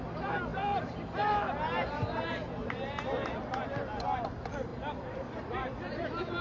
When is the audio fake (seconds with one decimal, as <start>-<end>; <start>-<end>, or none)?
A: 0.0-0.5; 4.3-6.4